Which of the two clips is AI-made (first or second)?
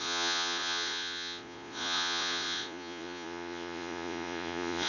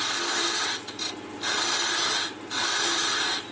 first